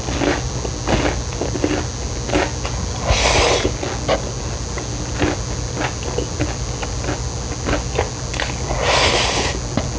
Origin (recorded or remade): recorded